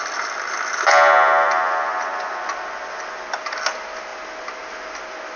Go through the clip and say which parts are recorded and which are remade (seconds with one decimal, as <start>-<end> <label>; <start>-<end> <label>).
0.0-5.4 recorded

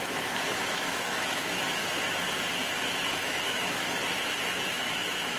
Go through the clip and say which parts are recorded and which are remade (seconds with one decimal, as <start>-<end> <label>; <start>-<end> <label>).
0.0-1.8 remade; 1.8-2.8 recorded; 2.8-4.0 remade; 4.0-4.5 recorded; 4.5-5.4 remade

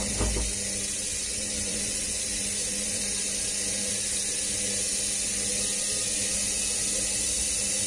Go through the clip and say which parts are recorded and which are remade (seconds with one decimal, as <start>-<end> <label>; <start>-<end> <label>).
0.0-1.1 recorded; 1.1-3.0 remade; 3.0-7.9 recorded

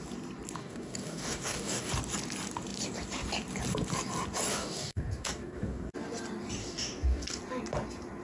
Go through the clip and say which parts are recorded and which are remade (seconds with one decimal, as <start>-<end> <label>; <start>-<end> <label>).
0.0-0.6 recorded; 0.6-1.9 remade; 1.9-4.5 recorded; 4.5-5.9 remade; 5.9-6.6 recorded; 6.6-7.4 remade; 7.4-8.2 recorded

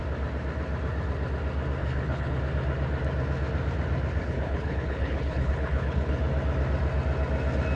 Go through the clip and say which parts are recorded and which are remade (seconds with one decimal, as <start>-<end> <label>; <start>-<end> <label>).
0.0-1.8 recorded; 1.8-2.4 remade; 2.4-4.2 recorded; 4.2-6.2 remade; 6.2-7.8 recorded

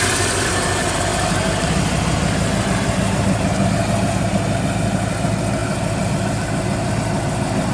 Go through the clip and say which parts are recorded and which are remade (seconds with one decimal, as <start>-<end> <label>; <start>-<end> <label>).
0.0-7.7 recorded

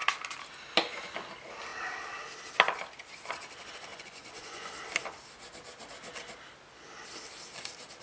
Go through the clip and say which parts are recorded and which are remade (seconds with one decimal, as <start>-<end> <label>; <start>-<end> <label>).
0.0-3.9 recorded; 3.9-4.7 remade; 4.7-8.0 recorded

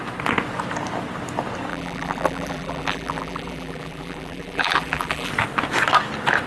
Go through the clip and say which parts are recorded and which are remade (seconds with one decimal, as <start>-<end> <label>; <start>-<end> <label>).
0.0-1.7 recorded; 1.7-5.3 remade; 5.3-6.5 recorded